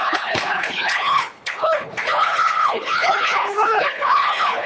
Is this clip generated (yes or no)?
yes